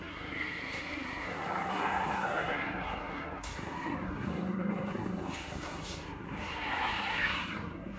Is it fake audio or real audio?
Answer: fake